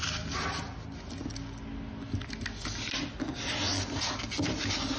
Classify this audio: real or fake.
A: real